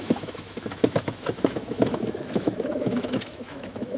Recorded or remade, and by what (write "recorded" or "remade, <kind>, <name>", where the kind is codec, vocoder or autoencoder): remade, autoencoder, DAC-VAE